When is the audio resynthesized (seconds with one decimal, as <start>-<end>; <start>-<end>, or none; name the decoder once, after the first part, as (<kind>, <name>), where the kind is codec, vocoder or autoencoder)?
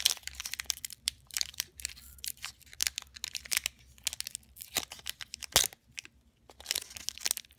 0.0-2.8 (vocoder, BigVGAN v2)